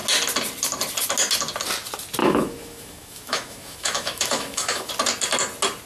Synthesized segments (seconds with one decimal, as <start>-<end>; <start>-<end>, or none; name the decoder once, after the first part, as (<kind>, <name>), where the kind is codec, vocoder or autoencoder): 2.2-4.9 (autoencoder, DAC-VAE)